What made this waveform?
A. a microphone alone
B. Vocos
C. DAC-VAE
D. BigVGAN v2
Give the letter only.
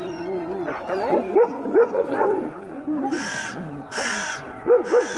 B